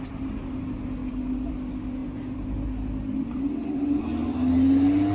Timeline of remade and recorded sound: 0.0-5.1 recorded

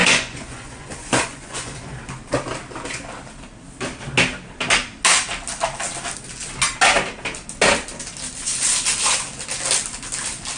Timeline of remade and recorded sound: 0.0-1.9 remade; 1.9-10.6 recorded

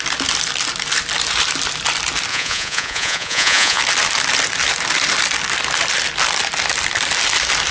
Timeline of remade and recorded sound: 0.0-2.3 recorded; 2.3-3.8 remade; 3.8-7.7 recorded